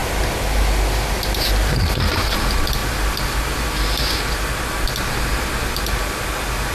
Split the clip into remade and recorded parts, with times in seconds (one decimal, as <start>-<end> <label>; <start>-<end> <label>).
0.0-6.7 recorded